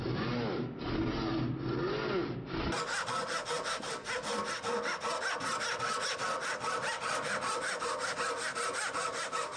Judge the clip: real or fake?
real